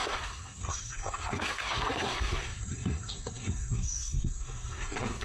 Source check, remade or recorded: remade